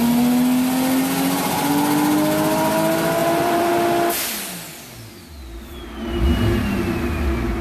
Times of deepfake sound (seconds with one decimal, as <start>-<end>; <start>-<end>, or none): 3.2-3.7